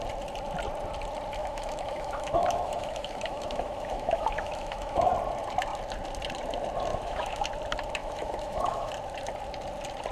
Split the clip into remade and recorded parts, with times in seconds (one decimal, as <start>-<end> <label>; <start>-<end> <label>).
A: 0.0-1.4 recorded; 1.4-5.1 remade; 5.1-6.9 recorded; 6.9-7.5 remade; 7.5-8.0 recorded; 8.0-8.9 remade; 8.9-10.1 recorded